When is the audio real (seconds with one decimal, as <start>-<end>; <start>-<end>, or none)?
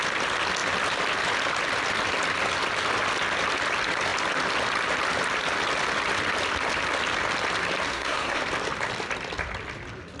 0.0-7.9; 8.4-10.2